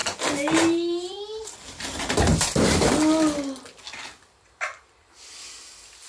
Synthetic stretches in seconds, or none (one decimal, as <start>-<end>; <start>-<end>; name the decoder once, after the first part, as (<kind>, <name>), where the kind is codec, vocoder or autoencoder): 0.0-2.9 (vocoder, BigVGAN v2)